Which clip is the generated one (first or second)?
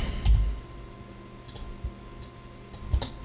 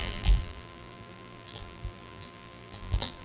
second